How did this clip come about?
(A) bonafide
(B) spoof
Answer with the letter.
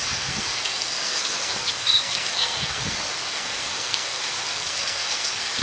B